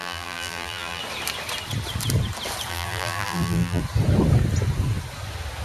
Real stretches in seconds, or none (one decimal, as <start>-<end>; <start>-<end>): 1.0-2.7; 3.8-5.6